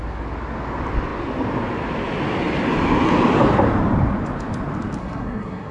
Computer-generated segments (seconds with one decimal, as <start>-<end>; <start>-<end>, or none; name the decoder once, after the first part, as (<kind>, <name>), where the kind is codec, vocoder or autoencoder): 5.0-5.7 (codec, SNAC)